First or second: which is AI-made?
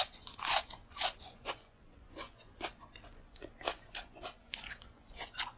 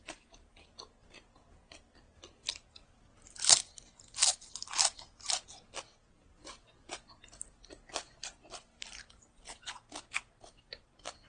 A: first